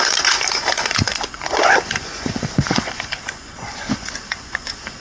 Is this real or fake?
fake